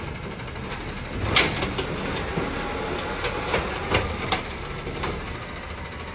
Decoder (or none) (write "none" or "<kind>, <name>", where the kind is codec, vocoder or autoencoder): none